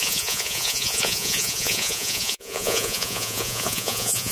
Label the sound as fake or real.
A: fake